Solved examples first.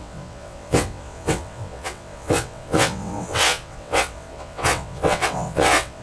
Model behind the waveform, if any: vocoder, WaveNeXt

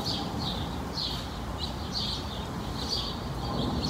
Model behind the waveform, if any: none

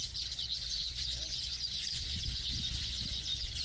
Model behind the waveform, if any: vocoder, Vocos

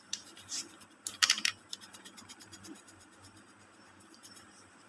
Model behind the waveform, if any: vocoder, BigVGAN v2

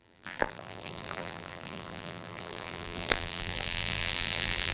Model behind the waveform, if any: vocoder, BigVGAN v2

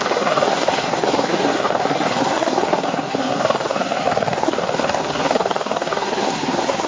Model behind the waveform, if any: codec, SNAC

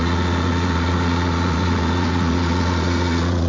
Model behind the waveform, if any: vocoder, Vocos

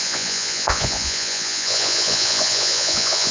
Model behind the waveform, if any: vocoder, Vocos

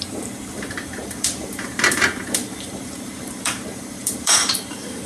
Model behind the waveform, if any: vocoder, BigVGAN v2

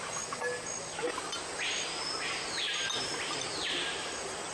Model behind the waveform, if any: none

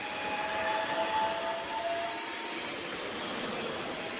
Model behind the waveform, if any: none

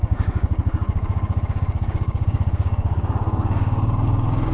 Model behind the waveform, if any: codec, DAC